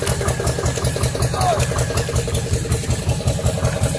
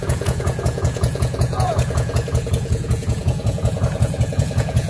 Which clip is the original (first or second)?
first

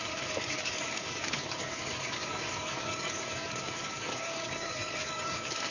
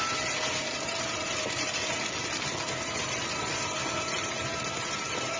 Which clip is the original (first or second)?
second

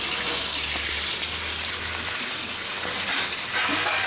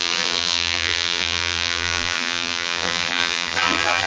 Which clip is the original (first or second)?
first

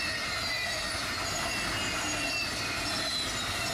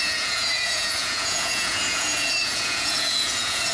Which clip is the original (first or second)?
first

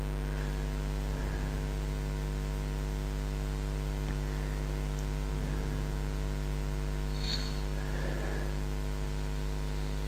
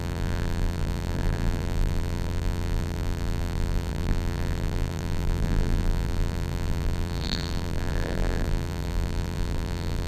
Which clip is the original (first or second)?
first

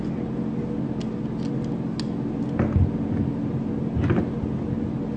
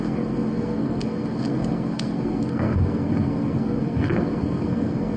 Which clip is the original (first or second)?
first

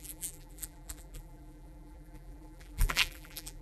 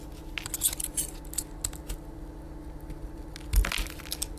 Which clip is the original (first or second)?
second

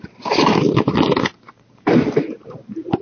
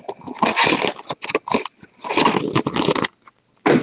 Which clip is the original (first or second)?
second